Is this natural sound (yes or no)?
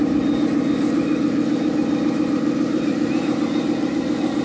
no